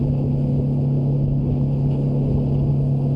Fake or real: real